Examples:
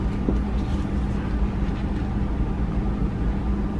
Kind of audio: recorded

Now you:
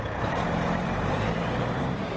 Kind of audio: remade